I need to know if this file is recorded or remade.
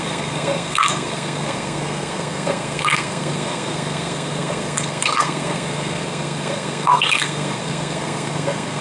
remade